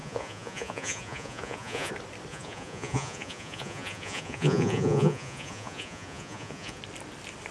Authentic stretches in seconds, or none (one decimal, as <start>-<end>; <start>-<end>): 1.9-2.3; 6.8-7.5